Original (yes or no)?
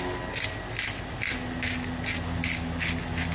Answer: yes